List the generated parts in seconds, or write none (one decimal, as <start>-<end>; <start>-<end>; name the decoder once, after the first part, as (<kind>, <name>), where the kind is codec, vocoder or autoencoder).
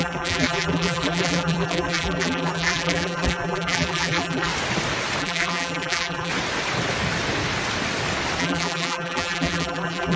0.0-4.5 (vocoder, BigVGAN v2); 5.2-6.3; 8.4-10.2